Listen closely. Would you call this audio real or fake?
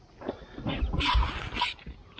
real